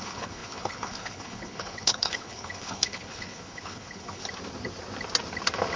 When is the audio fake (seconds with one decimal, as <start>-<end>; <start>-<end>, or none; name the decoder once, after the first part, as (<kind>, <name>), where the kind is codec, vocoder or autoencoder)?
0.0-4.2 (codec, HILCodec)